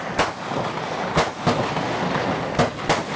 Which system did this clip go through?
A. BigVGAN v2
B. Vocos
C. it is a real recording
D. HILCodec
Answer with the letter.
C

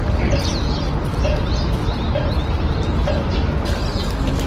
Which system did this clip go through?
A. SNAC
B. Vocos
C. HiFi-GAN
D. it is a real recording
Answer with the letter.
D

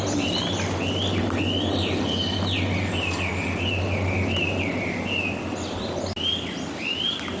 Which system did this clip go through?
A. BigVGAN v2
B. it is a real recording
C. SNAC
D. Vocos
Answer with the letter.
B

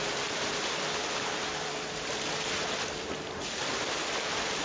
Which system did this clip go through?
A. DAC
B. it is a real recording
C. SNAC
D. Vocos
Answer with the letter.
B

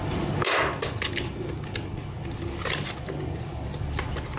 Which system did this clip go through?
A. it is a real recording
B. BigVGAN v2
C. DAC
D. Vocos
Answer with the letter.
A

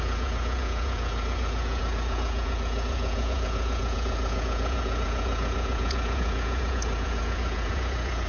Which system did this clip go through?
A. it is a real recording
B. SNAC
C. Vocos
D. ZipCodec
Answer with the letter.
C